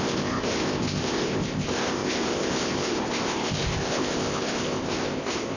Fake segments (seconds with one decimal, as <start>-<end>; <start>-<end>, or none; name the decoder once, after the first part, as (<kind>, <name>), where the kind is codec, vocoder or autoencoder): 0.0-5.6 (codec, ZipCodec)